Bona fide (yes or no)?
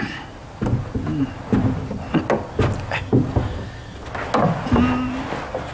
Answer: yes